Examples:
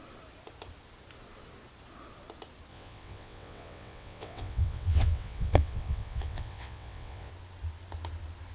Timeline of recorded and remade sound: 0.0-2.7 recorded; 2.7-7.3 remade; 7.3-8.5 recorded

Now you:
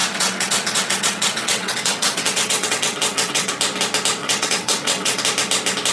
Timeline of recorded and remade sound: 0.0-3.5 remade; 3.5-4.2 recorded; 4.2-5.2 remade; 5.2-5.9 recorded

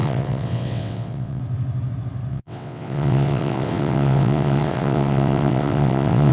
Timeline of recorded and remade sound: 0.0-1.4 remade; 1.4-2.3 recorded; 2.3-6.3 remade

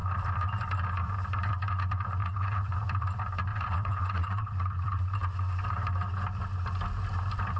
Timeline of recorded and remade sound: 0.0-2.2 recorded; 2.2-2.7 remade; 2.7-3.5 recorded; 3.5-4.5 remade; 4.5-7.6 recorded

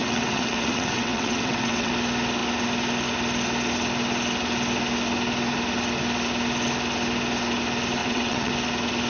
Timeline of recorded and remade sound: 0.0-1.9 remade; 1.9-8.0 recorded; 8.0-8.5 remade; 8.5-9.1 recorded

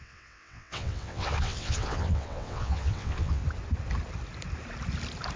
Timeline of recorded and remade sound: 0.0-3.4 remade; 3.4-5.4 recorded

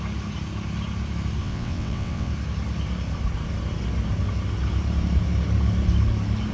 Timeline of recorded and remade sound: 0.0-1.4 recorded; 1.4-2.3 remade; 2.3-6.5 recorded